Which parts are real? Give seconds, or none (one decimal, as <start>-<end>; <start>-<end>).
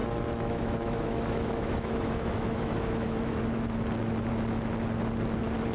3.4-5.7